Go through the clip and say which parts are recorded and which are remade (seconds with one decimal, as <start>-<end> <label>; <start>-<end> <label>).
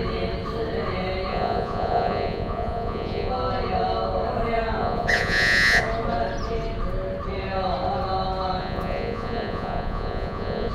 0.0-1.3 recorded; 1.3-3.3 remade; 3.3-4.8 recorded; 4.8-5.8 remade; 5.8-8.6 recorded; 8.6-10.7 remade